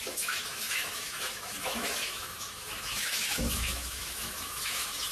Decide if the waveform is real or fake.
fake